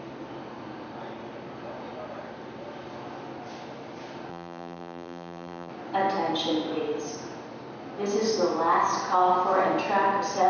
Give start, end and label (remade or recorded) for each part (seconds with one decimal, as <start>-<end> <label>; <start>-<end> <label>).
0.0-4.3 recorded; 4.3-5.7 remade; 5.7-10.5 recorded